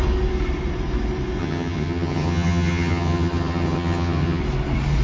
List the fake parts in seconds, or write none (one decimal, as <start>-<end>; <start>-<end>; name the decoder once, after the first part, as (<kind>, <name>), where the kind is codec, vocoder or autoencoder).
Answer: 1.4-4.4 (vocoder, HiFi-GAN)